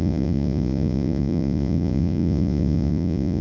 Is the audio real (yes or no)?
no